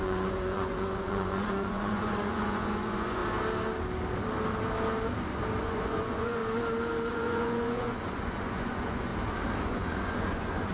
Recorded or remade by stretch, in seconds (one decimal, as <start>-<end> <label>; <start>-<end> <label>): 0.0-3.2 remade; 3.2-5.6 recorded; 5.6-6.4 remade; 6.4-7.1 recorded; 7.1-9.1 remade; 9.1-9.6 recorded; 9.6-10.7 remade

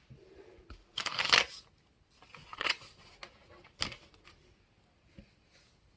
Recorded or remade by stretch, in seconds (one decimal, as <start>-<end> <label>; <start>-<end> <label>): 0.0-2.4 recorded; 2.4-3.1 remade; 3.1-6.0 recorded

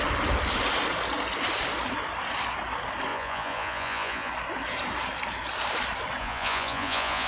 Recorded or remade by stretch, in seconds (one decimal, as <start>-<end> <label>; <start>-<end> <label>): 0.0-3.1 recorded; 3.1-4.3 remade; 4.3-6.2 recorded; 6.2-7.3 remade

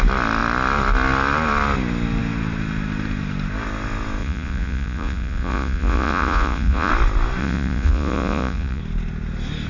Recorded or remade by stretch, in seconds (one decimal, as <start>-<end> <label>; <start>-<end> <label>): 0.0-4.2 recorded; 4.2-6.9 remade; 6.9-7.4 recorded; 7.4-8.8 remade; 8.8-9.7 recorded

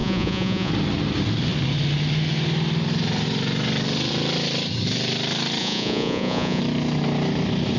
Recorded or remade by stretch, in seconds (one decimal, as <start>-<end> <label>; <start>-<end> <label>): 0.0-0.7 remade; 0.7-5.6 recorded; 5.6-6.6 remade; 6.6-7.8 recorded

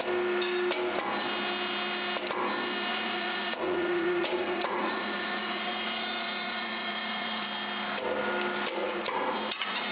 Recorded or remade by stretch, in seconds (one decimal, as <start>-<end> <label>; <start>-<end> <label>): 0.0-2.9 recorded; 2.9-7.4 remade; 7.4-8.8 recorded; 8.8-9.9 remade

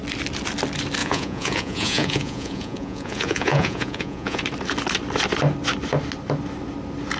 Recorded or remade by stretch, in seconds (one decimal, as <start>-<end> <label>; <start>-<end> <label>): 0.0-1.0 recorded; 1.0-4.4 remade; 4.4-7.2 recorded

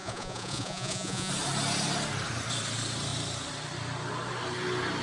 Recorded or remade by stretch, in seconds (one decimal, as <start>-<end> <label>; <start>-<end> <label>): 0.0-1.3 remade; 1.3-5.0 recorded